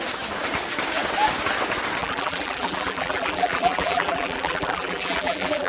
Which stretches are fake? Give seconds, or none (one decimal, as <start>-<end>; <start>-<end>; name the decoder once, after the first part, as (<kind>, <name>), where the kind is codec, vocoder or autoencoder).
2.0-5.7 (vocoder, BigVGAN v2)